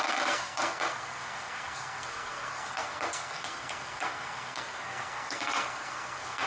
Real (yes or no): no